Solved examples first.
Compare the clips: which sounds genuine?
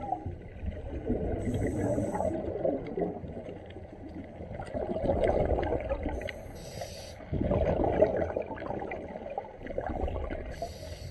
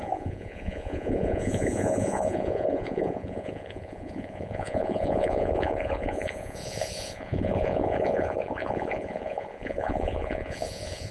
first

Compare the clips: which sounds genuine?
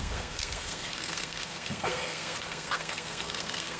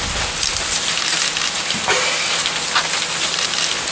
second